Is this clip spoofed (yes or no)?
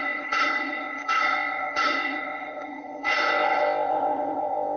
yes